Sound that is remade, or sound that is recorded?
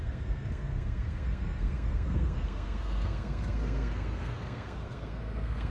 remade